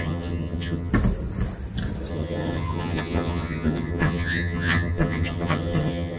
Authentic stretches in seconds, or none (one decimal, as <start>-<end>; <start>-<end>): 0.9-2.1

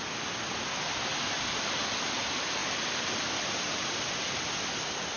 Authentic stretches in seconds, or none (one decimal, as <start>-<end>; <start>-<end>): 0.0-5.2